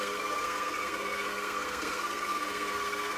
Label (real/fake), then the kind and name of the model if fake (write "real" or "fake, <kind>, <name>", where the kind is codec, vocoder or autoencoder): fake, codec, SNAC